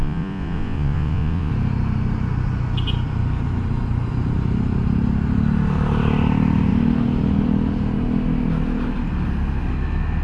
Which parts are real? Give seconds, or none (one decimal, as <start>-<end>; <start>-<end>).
1.5-10.2